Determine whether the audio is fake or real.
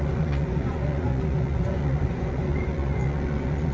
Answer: fake